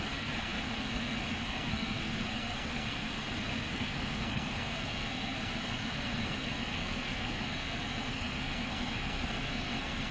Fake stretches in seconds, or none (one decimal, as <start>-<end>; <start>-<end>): 0.0-10.1